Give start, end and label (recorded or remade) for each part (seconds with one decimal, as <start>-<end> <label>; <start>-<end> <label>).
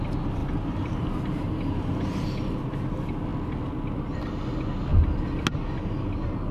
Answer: 0.0-6.5 recorded